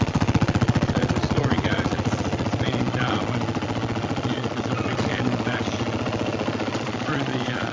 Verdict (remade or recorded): remade